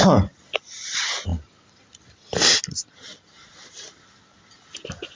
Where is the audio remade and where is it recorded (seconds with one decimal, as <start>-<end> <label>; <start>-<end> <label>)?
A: 0.0-5.2 recorded

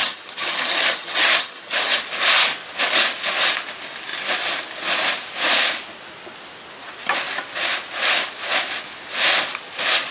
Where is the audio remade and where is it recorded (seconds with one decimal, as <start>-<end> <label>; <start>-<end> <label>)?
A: 0.0-2.0 remade; 2.0-10.1 recorded

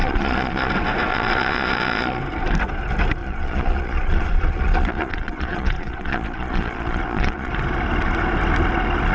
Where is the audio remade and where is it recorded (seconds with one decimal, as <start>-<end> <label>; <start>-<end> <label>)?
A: 0.0-0.7 remade; 0.7-1.1 recorded; 1.1-2.2 remade; 2.2-3.2 recorded; 3.2-7.5 remade; 7.5-9.1 recorded

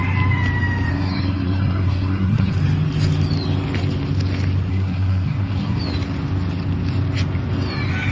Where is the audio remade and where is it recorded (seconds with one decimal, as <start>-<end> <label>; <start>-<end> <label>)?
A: 0.0-0.9 recorded; 0.9-2.5 remade; 2.5-4.7 recorded; 4.7-5.8 remade; 5.8-8.1 recorded

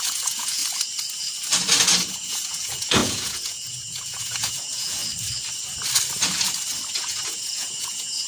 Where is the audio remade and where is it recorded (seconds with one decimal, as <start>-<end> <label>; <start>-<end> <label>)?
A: 0.0-0.6 remade; 0.6-2.1 recorded; 2.1-5.0 remade; 5.0-7.0 recorded; 7.0-8.3 remade